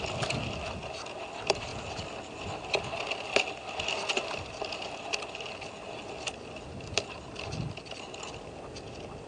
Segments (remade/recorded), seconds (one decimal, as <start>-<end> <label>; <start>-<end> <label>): 0.0-9.3 recorded